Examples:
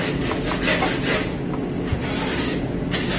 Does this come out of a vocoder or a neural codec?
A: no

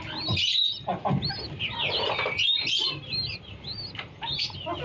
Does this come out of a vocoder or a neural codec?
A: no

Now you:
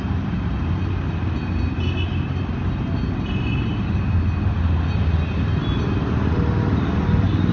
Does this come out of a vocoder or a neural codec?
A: no